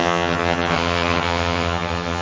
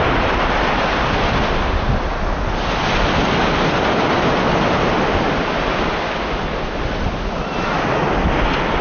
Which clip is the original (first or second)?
second